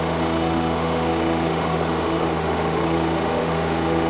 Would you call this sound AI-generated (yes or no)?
yes